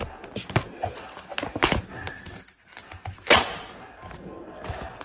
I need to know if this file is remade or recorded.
recorded